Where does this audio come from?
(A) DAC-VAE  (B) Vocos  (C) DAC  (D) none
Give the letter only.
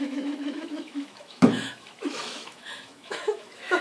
A